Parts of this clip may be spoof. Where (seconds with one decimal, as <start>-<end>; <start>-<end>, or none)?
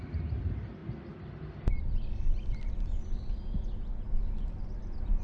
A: none